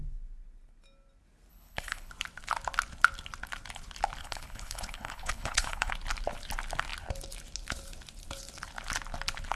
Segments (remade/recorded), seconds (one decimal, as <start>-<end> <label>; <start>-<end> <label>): 0.0-1.5 recorded; 1.5-2.1 remade; 2.1-4.2 recorded; 4.2-5.9 remade; 5.9-9.6 recorded